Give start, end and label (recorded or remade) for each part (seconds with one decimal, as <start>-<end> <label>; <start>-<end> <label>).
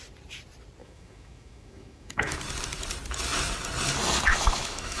0.0-0.8 recorded; 0.8-2.4 remade; 2.4-4.3 recorded; 4.3-5.0 remade